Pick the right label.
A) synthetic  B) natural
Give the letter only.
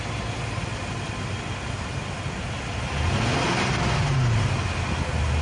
B